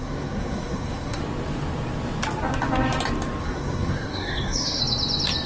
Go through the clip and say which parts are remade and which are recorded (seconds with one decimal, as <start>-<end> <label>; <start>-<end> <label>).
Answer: 0.0-1.2 remade; 1.2-3.4 recorded; 3.4-4.8 remade; 4.8-5.5 recorded